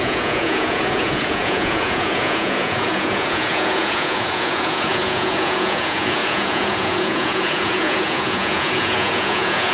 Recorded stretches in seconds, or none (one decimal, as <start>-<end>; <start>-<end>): none